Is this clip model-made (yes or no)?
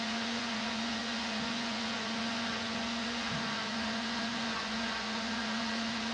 yes